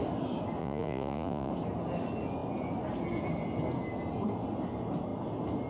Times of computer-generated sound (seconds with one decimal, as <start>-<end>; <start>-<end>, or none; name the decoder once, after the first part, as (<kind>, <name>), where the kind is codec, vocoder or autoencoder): 0.6-1.5 (vocoder, Vocos)